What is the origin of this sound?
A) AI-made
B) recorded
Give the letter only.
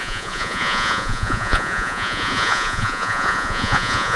A